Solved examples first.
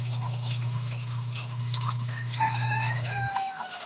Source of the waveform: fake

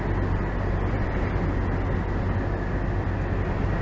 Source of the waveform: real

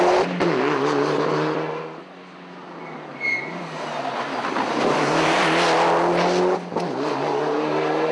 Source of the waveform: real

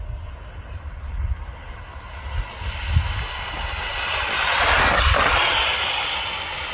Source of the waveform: real